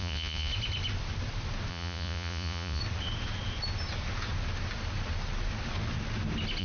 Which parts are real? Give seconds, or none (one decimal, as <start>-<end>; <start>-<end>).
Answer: 0.5-1.7; 2.8-6.6